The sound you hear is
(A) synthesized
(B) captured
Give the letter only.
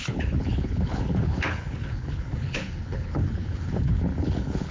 A